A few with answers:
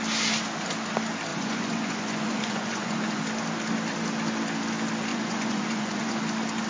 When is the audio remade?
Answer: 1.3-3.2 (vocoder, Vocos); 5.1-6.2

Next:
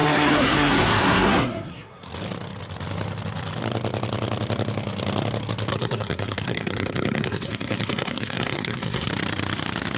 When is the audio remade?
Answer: 0.0-2.1 (codec, SNAC); 5.7-9.1